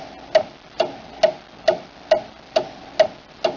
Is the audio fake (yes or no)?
no